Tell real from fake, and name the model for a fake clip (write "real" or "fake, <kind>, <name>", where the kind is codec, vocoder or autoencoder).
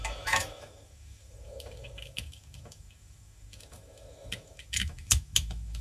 fake, autoencoder, DAC-VAE